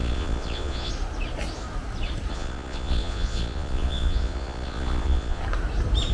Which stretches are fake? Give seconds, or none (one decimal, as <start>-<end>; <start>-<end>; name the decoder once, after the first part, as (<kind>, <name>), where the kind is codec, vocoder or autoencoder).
0.0-0.9 (vocoder, Vocos); 2.3-5.4